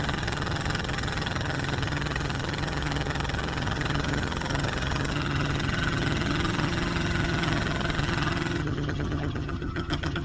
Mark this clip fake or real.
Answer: fake